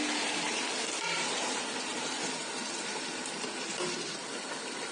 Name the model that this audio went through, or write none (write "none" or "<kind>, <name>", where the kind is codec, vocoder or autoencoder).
none